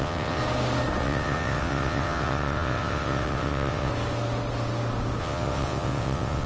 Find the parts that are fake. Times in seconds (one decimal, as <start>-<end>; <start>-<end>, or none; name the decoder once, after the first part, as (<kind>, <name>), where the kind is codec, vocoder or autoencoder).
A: 0.0-0.4 (vocoder, WaveNeXt); 1.0-3.9; 5.2-6.5